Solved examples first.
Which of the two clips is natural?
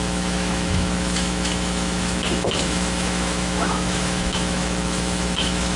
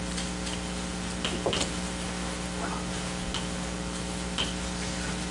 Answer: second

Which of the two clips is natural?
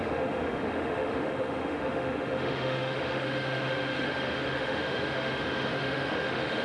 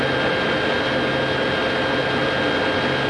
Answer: second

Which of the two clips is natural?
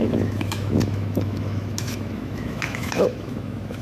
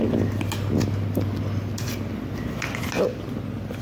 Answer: second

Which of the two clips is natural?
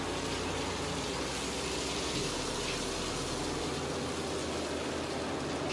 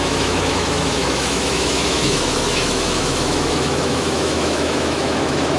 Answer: first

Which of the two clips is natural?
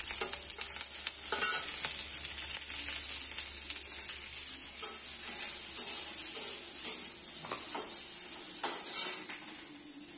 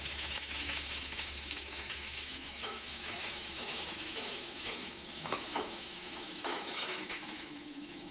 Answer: first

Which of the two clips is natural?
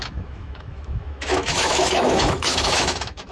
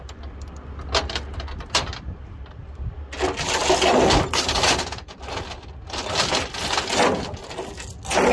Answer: second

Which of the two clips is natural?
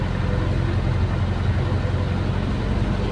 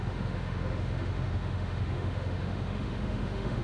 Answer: first